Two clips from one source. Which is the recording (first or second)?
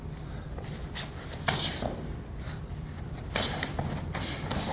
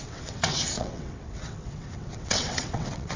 first